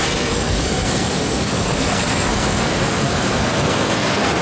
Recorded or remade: remade